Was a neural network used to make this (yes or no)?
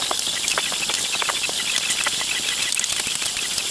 no